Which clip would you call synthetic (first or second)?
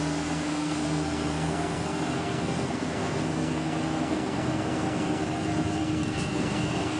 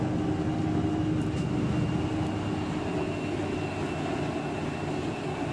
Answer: first